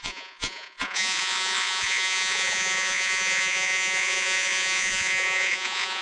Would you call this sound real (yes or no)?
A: no